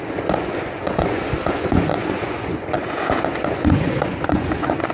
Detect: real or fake fake